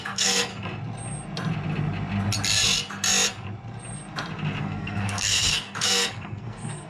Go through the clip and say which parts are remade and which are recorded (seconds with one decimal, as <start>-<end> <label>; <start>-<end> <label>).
0.0-0.5 remade; 0.5-4.6 recorded; 4.6-6.9 remade